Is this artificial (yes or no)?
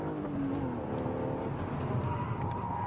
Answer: no